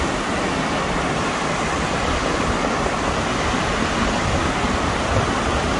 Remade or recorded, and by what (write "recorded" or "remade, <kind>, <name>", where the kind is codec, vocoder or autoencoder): recorded